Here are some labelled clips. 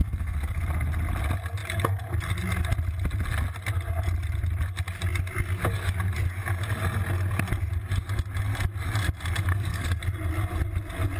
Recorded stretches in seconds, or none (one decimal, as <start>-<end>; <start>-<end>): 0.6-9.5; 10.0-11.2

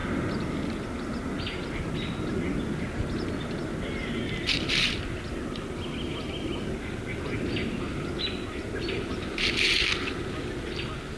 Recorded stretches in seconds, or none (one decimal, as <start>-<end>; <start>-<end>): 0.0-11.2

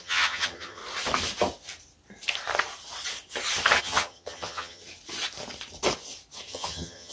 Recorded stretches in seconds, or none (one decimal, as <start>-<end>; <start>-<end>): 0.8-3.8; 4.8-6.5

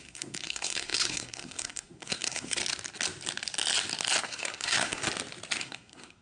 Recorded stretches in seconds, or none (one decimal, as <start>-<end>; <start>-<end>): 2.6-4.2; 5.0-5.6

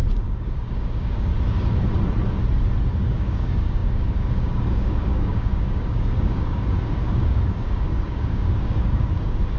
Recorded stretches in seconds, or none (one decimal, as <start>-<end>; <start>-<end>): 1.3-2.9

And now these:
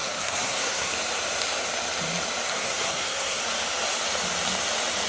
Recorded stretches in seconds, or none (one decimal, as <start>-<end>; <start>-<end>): 0.9-2.5; 3.4-5.1